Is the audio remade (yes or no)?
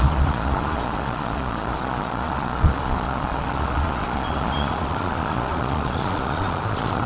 yes